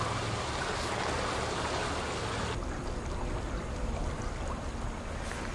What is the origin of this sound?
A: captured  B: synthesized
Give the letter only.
A